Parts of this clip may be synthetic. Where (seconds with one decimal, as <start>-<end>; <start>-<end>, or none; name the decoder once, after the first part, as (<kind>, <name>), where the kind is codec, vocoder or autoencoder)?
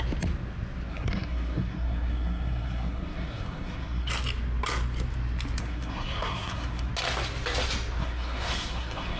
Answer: 0.9-4.1 (codec, SNAC); 5.6-6.9; 8.0-9.2